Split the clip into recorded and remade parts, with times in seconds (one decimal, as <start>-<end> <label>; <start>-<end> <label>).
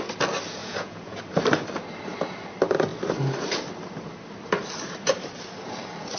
0.0-0.6 recorded; 0.6-1.2 remade; 1.2-6.2 recorded